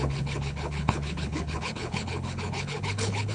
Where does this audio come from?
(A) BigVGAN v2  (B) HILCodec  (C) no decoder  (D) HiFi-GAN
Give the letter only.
B